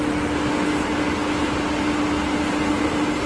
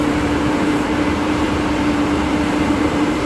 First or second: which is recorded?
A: first